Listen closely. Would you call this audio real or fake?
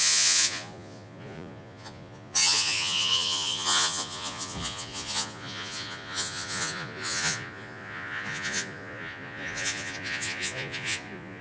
fake